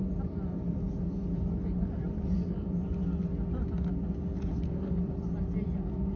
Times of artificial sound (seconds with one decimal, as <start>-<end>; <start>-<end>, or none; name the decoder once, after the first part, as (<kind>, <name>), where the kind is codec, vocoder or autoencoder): 4.5-5.0 (codec, SNAC)